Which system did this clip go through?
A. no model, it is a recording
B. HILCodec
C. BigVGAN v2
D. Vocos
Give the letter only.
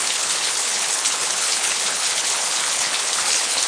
B